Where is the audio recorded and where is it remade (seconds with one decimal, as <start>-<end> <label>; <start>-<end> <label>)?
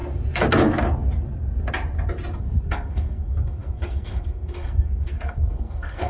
0.0-2.4 recorded; 2.4-6.1 remade